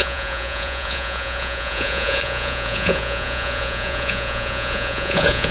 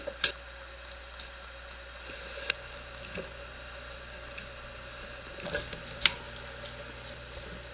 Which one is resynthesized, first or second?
first